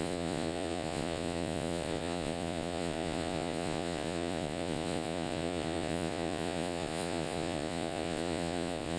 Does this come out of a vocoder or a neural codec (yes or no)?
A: yes